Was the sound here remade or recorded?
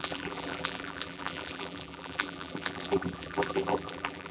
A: remade